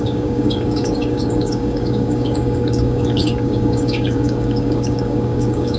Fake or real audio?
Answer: fake